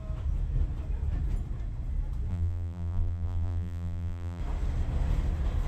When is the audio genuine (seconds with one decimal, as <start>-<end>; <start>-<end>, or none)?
0.0-2.3; 4.4-5.7